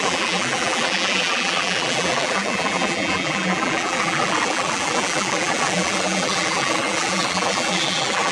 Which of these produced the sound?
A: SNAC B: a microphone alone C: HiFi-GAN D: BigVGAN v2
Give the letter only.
D